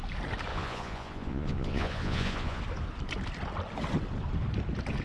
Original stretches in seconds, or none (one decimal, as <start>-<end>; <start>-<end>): 0.0-0.5; 2.6-5.0